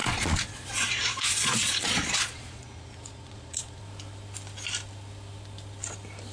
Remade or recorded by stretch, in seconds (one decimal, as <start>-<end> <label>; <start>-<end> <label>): 0.0-3.8 remade; 3.8-6.3 recorded